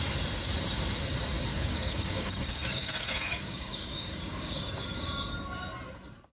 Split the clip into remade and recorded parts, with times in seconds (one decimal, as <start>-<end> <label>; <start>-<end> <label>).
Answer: 0.0-1.5 recorded; 1.5-5.3 remade; 5.3-6.4 recorded